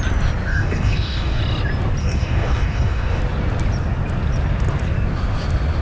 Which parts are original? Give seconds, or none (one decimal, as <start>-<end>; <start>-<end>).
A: 0.0-0.5; 1.4-2.0; 3.2-5.8